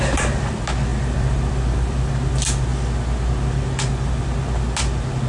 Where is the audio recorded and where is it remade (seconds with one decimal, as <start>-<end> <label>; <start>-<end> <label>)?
0.0-0.9 recorded; 0.9-2.1 remade; 2.1-5.3 recorded